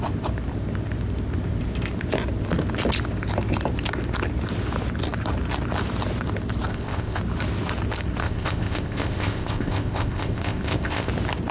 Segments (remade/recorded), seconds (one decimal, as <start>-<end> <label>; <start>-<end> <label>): 0.0-6.7 recorded; 6.7-7.2 remade; 7.2-8.2 recorded; 8.2-11.1 remade; 11.1-11.5 recorded

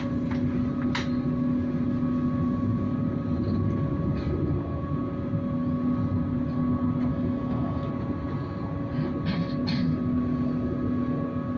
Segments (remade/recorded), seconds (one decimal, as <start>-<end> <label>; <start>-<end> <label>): 0.0-7.1 recorded; 7.1-7.9 remade; 7.9-11.6 recorded

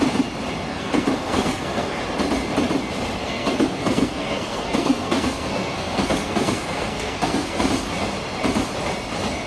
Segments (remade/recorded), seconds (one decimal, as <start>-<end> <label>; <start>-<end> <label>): 0.0-0.7 recorded; 0.7-2.0 remade; 2.0-3.2 recorded; 3.2-7.7 remade; 7.7-9.5 recorded